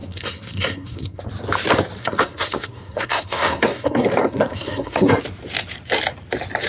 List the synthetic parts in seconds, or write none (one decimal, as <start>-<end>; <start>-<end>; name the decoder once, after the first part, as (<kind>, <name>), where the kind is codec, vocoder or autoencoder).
0.0-1.2 (codec, SNAC); 2.0-5.2